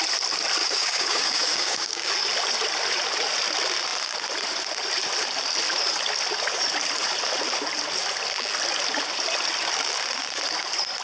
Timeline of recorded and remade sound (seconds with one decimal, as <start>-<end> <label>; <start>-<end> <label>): 0.0-0.6 recorded; 0.6-2.1 remade; 2.1-11.0 recorded